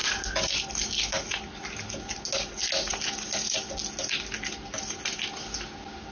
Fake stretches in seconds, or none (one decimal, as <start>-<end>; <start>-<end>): none